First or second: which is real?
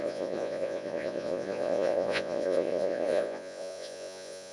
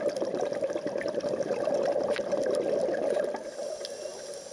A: second